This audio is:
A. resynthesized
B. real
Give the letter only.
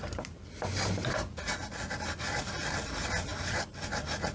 B